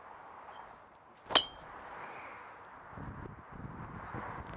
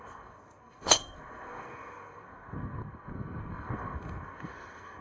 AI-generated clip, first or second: second